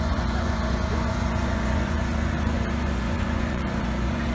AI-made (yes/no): yes